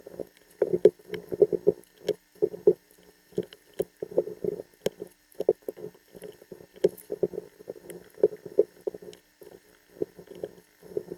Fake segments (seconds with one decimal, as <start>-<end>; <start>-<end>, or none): none